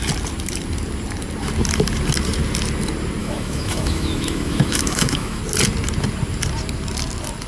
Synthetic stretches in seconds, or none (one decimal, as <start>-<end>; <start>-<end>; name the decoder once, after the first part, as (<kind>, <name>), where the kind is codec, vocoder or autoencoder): 3.2-5.4 (autoencoder, DAC-VAE)